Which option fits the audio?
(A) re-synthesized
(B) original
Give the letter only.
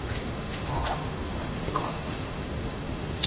A